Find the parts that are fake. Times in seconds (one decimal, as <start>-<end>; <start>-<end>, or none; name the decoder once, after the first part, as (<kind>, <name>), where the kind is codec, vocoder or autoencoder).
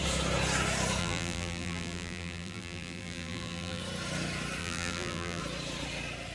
1.0-3.8 (vocoder, BigVGAN v2); 4.6-5.4